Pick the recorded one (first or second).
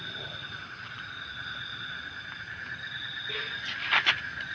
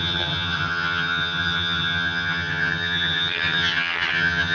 first